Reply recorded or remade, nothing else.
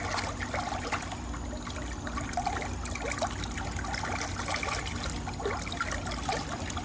recorded